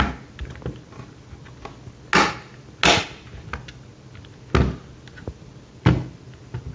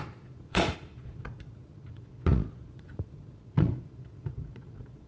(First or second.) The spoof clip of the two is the second